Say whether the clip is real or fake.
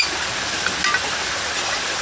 real